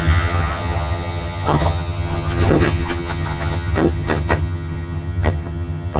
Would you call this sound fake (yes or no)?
yes